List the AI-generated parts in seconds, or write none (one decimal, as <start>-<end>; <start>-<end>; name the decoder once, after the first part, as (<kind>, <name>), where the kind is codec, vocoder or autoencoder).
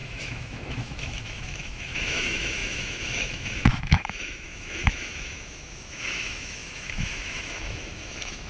0.0-8.5 (autoencoder, DAC-VAE)